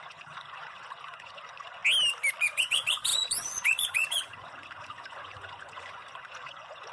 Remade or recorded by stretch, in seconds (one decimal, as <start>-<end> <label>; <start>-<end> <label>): 0.0-1.8 remade; 1.8-2.4 recorded; 2.4-6.9 remade